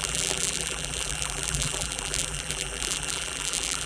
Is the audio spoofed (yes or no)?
yes